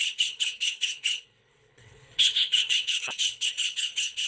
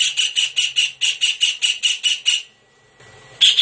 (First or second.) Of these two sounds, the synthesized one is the first